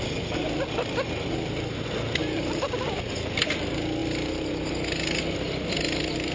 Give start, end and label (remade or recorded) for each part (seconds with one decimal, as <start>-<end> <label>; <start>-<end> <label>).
0.0-2.2 recorded; 2.2-3.0 remade; 3.0-4.0 recorded; 4.0-4.7 remade; 4.7-6.3 recorded